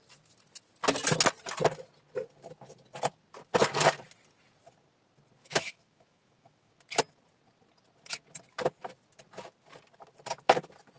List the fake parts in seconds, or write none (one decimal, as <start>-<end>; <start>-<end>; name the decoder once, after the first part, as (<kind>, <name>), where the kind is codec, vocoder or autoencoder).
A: 5.4-6.8 (autoencoder, DAC-VAE)